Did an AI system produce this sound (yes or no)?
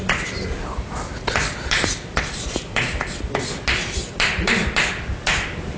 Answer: no